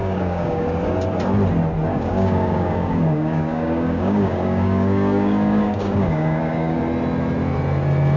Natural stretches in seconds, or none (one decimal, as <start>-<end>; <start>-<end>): 0.6-1.9; 6.8-8.2

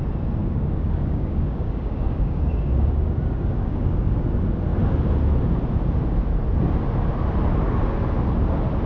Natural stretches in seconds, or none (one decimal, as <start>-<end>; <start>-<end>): 0.0-0.4; 4.1-8.9

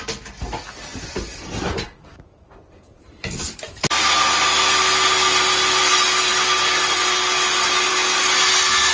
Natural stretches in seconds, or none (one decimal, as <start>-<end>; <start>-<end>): 0.0-8.9